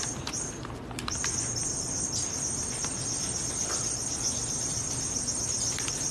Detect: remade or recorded recorded